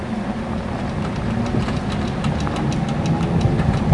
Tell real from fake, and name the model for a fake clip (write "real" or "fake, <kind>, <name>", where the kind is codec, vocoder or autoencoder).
real